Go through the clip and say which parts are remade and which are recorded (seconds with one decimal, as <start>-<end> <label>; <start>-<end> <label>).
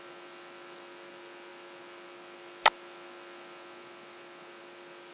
0.0-5.1 recorded